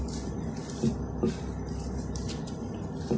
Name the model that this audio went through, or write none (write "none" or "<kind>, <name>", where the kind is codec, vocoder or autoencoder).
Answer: none